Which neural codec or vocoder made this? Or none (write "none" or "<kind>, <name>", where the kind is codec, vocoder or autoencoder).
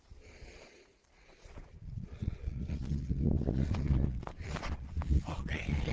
vocoder, Vocos